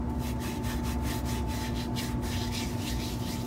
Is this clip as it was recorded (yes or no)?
yes